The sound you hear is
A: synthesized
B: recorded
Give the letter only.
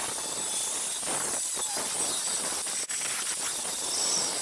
B